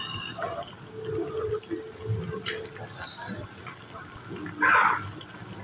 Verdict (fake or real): real